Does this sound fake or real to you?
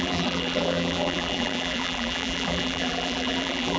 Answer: fake